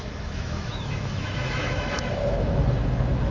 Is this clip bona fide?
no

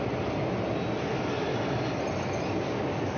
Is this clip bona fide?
yes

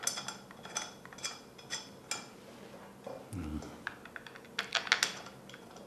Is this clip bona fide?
yes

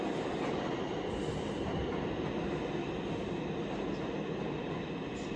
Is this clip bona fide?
yes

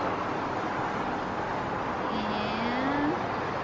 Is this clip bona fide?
yes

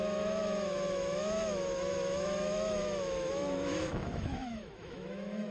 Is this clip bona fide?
no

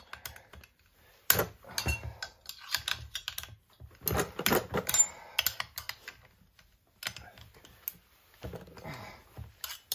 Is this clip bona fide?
yes